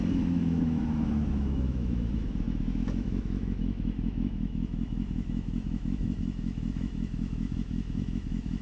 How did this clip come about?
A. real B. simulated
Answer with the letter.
B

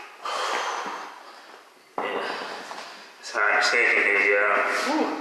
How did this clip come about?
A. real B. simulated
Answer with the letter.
A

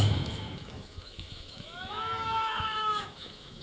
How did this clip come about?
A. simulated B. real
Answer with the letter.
A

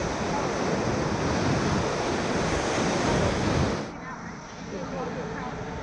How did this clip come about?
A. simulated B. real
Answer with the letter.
B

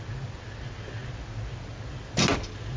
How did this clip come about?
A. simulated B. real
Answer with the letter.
B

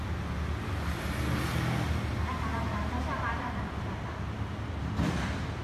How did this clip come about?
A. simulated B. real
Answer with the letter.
B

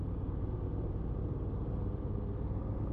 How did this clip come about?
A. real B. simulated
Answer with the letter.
A